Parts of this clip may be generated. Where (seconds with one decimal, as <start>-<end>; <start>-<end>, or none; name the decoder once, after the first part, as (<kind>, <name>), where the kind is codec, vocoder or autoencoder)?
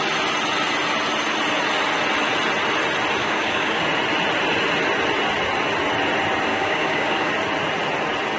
3.2-3.8 (codec, DAC); 6.5-7.3